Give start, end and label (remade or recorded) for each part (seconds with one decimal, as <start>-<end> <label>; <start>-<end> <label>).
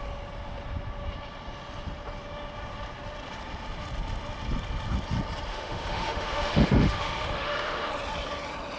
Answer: 0.0-5.5 recorded; 5.5-7.9 remade; 7.9-8.8 recorded